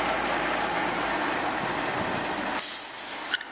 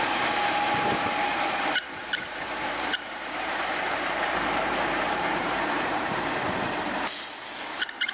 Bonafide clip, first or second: first